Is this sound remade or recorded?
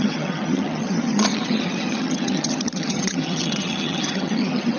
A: remade